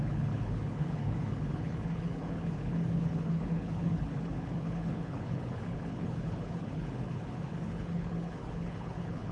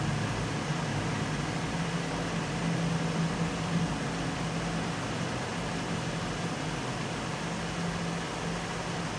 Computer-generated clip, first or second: first